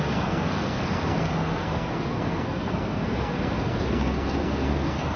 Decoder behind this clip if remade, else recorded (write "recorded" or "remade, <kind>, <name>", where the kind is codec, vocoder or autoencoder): remade, codec, SNAC